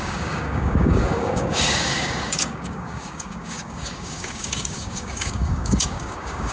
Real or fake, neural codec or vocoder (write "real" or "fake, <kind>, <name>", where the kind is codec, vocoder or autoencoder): fake, codec, DAC